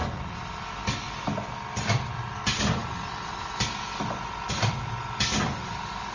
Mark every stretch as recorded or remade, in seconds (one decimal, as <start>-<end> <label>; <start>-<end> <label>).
0.0-0.7 remade; 0.7-2.8 recorded; 2.8-5.6 remade; 5.6-6.1 recorded